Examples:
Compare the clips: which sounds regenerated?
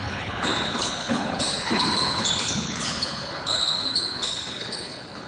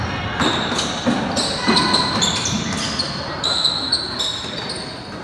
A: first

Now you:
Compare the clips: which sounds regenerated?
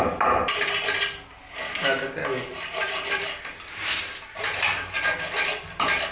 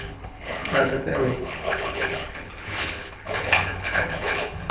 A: second